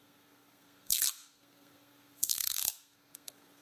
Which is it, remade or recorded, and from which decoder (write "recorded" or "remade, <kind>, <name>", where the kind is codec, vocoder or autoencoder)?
remade, codec, SNAC